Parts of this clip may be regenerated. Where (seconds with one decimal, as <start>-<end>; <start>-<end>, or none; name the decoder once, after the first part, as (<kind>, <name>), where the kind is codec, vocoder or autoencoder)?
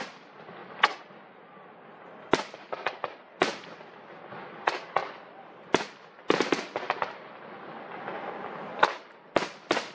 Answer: 5.0-9.9 (vocoder, BigVGAN v2)